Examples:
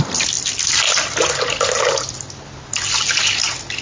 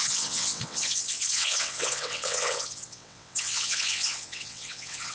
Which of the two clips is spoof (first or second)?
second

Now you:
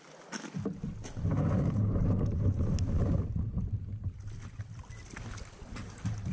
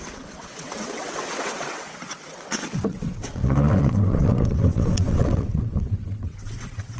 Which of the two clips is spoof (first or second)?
second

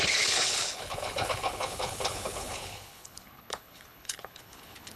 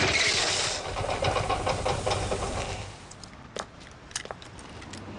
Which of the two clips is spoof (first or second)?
first